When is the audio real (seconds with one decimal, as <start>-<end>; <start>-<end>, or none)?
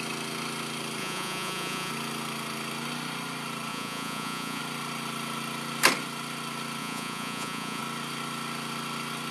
0.0-1.0; 1.9-3.7; 4.6-6.8; 7.8-9.3